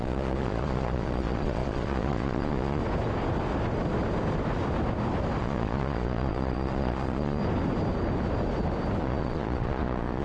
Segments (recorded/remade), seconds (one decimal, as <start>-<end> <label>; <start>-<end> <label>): 0.0-2.8 remade; 2.8-5.4 recorded; 5.4-7.4 remade; 7.4-9.0 recorded; 9.0-10.2 remade